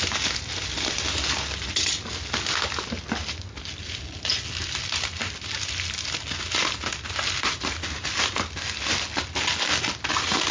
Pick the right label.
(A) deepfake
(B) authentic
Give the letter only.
B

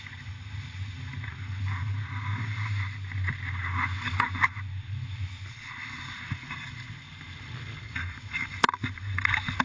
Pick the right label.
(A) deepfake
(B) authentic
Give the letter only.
B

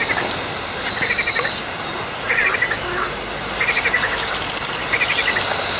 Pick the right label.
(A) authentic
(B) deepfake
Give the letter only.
A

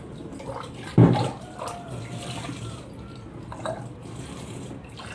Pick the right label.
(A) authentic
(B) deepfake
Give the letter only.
A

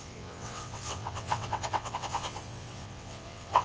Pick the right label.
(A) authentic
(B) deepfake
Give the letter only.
B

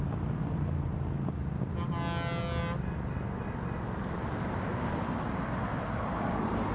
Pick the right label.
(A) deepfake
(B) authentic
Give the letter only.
B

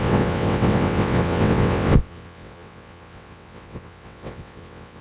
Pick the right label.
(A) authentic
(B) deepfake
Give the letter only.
B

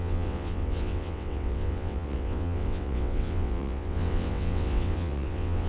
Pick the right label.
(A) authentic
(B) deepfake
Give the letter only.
B